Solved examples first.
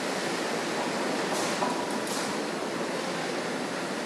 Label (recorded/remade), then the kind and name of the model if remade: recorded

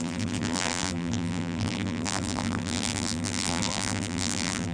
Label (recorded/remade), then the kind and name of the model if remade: remade, vocoder, BigVGAN v2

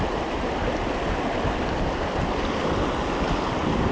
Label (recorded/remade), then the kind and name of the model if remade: recorded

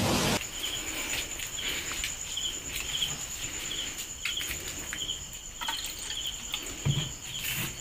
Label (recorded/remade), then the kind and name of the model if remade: recorded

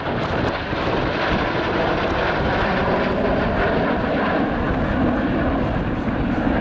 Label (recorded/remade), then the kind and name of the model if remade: recorded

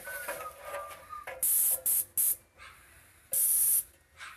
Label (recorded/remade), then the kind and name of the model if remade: recorded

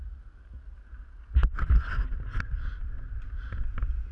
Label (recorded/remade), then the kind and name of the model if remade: recorded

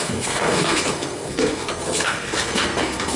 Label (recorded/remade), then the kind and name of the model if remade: remade, codec, SNAC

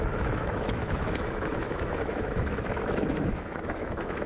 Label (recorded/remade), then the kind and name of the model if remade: remade, autoencoder, DAC-VAE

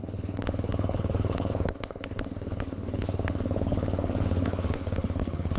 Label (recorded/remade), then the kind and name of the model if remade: remade, codec, HILCodec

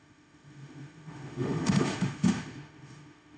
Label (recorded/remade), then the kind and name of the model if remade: remade, autoencoder, DAC-VAE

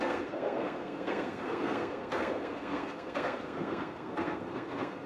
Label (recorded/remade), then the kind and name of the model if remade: remade, codec, SNAC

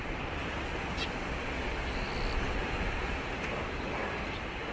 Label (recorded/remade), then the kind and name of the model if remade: remade, vocoder, BigVGAN v2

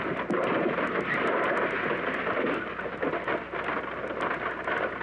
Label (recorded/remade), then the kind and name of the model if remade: recorded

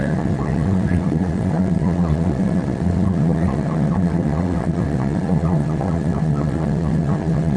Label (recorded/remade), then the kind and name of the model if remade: remade, vocoder, WaveNeXt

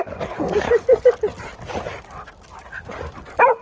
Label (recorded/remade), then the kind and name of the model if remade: recorded